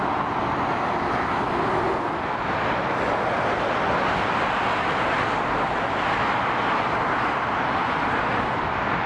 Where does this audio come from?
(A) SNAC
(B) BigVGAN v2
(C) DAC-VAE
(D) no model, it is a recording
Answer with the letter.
D